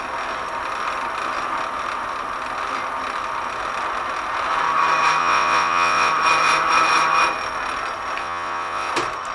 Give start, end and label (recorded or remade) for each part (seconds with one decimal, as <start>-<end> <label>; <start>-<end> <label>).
0.0-5.2 recorded; 5.2-6.1 remade; 6.1-8.2 recorded; 8.2-8.9 remade; 8.9-9.3 recorded